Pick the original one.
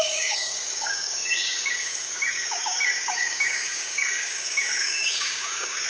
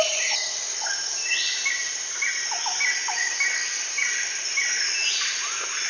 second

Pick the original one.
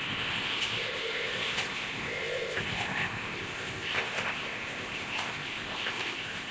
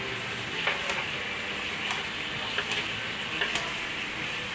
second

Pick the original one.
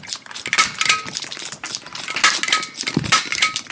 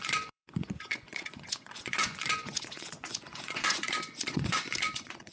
first